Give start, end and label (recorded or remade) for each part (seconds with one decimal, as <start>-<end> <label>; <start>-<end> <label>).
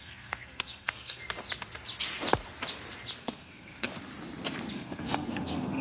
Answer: 0.0-1.2 remade; 1.2-3.2 recorded; 3.2-3.9 remade; 3.9-4.7 recorded; 4.7-5.8 remade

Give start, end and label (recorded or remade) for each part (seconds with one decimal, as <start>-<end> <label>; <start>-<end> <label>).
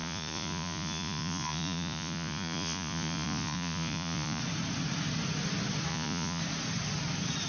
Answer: 0.0-4.4 remade; 4.4-5.9 recorded; 5.9-6.4 remade; 6.4-7.5 recorded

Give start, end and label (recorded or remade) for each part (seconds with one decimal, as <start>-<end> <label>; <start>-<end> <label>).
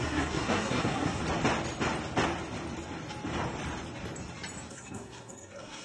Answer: 0.0-1.2 remade; 1.2-4.7 recorded; 4.7-5.8 remade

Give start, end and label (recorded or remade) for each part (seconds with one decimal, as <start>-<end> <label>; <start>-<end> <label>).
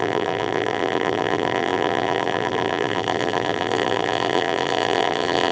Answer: 0.0-5.5 remade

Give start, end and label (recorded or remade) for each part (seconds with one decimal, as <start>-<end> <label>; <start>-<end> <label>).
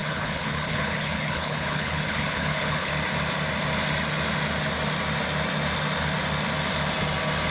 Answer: 0.0-2.9 remade; 2.9-7.5 recorded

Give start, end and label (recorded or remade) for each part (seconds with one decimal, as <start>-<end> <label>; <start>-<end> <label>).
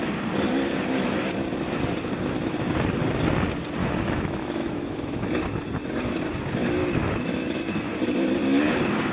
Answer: 0.0-3.8 recorded; 3.8-5.3 remade; 5.3-6.8 recorded; 6.8-8.0 remade; 8.0-9.1 recorded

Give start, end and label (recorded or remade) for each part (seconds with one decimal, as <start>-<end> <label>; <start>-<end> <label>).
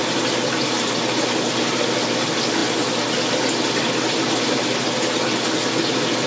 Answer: 0.0-6.3 recorded